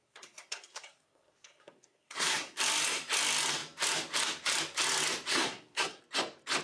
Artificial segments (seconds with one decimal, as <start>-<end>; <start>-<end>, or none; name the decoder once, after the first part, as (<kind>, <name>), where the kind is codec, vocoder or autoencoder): 0.0-2.6 (codec, SNAC); 5.3-6.0